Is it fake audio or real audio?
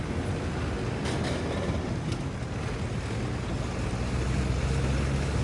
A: real